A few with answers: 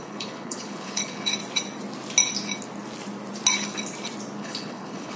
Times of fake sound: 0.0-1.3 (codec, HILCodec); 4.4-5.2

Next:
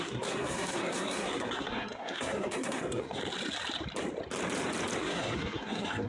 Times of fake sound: 0.0-3.2 (codec, SNAC); 5.0-6.1

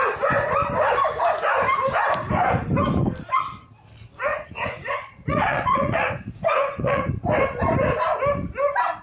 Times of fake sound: 4.3-7.1 (vocoder, Vocos)

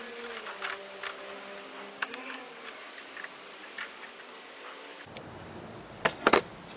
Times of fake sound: 1.7-2.6 (codec, DAC)

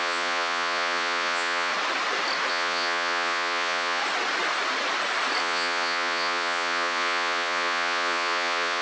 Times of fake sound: 0.0-1.7 (vocoder, Vocos); 2.5-4.0; 5.4-8.8